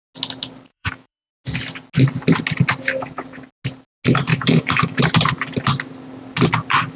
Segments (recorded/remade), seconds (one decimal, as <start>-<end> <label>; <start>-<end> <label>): 0.0-0.7 recorded; 0.7-1.3 remade; 1.3-4.3 recorded; 4.3-5.0 remade; 5.0-7.0 recorded